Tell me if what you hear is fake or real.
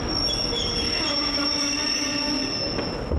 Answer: real